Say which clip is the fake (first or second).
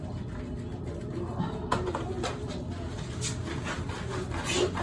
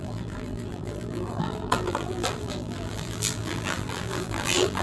second